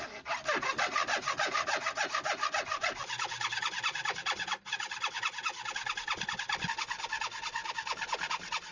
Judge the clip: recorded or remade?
recorded